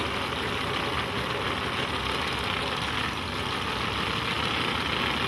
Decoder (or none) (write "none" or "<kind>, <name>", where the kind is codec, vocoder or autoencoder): none